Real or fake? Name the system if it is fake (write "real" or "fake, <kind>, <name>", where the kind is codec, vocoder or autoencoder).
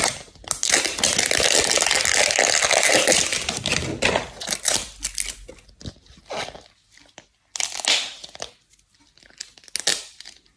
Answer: real